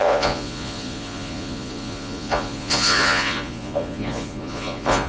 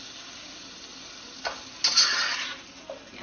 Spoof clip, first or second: first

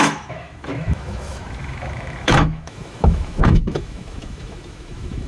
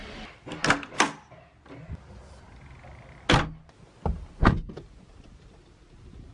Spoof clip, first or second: first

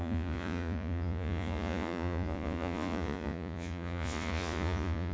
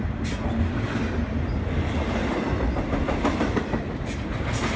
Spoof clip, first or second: first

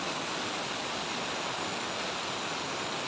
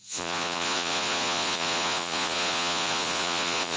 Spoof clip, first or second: second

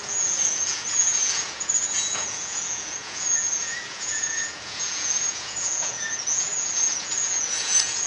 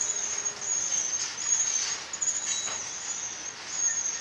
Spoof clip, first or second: first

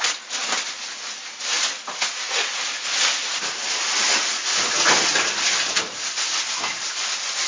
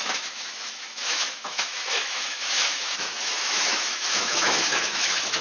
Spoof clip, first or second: second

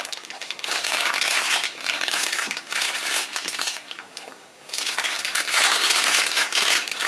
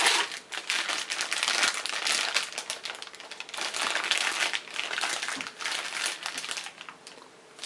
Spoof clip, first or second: first